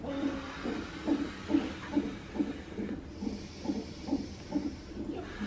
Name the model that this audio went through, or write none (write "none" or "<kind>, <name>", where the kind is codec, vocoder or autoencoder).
none